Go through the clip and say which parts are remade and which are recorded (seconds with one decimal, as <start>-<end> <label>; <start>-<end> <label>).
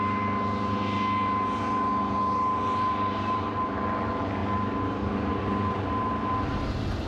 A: 0.0-7.1 recorded